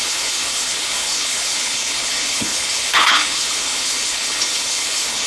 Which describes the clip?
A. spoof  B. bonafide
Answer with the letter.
A